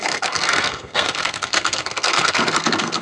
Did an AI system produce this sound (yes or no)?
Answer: yes